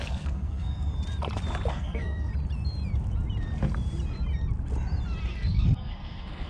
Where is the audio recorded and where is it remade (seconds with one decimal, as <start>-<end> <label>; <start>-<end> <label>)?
0.0-0.9 remade; 0.9-1.7 recorded; 1.7-2.3 remade; 2.3-5.3 recorded; 5.3-6.5 remade